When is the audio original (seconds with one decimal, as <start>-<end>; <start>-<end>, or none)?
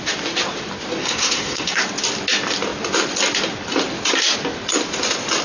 0.0-1.0; 1.8-5.4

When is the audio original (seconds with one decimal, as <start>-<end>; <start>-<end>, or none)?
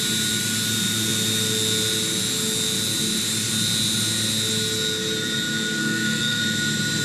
0.0-5.8; 6.4-7.0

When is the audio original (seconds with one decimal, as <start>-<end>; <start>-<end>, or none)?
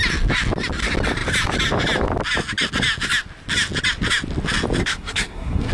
0.0-4.8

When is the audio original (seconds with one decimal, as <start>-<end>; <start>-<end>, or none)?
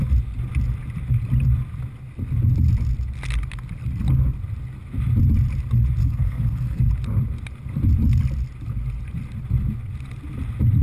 0.0-6.0; 6.8-10.8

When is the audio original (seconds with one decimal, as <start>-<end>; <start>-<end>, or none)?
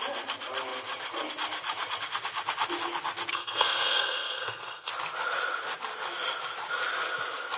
0.0-3.3; 4.9-7.6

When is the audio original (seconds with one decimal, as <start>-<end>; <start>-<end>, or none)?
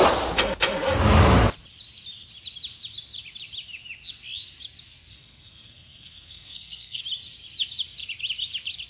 0.0-5.1; 7.0-8.9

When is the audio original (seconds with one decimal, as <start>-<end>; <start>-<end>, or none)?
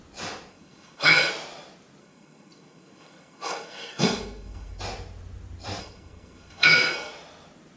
0.0-0.5; 1.3-2.0; 4.8-5.8; 7.1-7.8